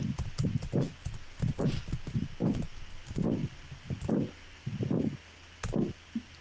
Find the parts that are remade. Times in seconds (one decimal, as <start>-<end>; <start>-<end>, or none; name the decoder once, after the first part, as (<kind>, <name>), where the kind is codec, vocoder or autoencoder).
3.4-4.7 (vocoder, BigVGAN v2)